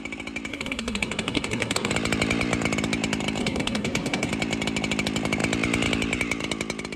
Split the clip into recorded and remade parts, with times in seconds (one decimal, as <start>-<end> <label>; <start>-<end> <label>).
0.0-0.5 recorded; 0.5-1.9 remade; 1.9-3.4 recorded; 3.4-4.3 remade; 4.3-7.0 recorded